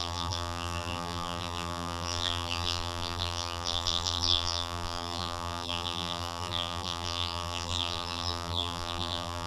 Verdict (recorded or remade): remade